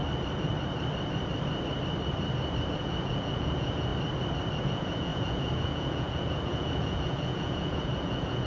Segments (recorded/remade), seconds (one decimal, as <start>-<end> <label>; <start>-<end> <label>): 0.0-2.6 recorded; 2.6-3.9 remade; 3.9-4.6 recorded; 4.6-8.5 remade